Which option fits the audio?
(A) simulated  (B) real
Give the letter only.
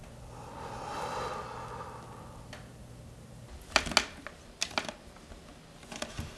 B